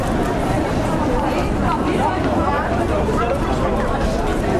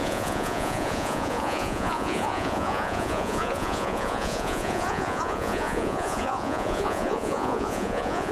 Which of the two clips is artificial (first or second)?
second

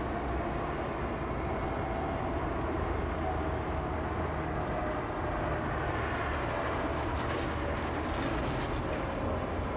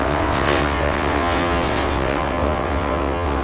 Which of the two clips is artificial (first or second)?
second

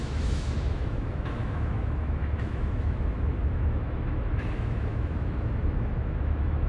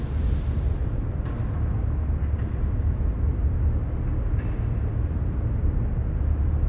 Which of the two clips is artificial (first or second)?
first